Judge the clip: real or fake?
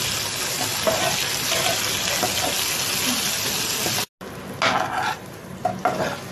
real